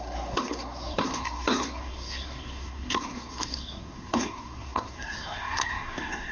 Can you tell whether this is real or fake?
fake